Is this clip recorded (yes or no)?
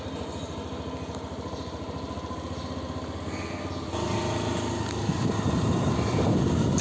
yes